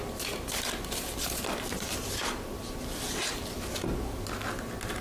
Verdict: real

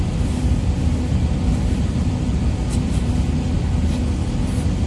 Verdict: real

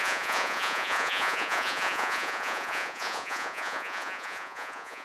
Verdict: fake